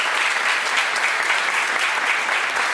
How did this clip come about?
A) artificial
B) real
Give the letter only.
B